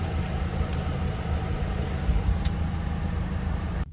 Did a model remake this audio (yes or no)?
yes